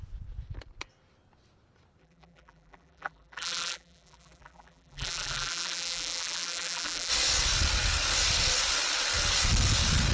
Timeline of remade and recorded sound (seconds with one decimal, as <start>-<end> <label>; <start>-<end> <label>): 0.0-2.0 recorded; 2.0-7.1 remade; 7.1-10.1 recorded